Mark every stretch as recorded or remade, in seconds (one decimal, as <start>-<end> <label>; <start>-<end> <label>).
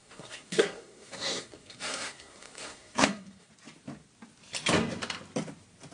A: 0.0-3.5 remade; 3.5-5.9 recorded